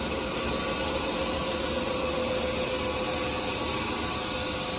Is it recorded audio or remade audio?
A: recorded